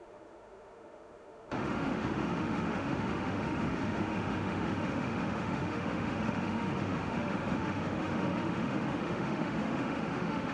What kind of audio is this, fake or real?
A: fake